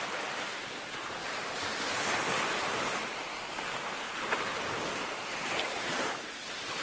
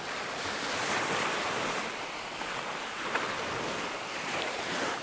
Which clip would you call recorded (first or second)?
first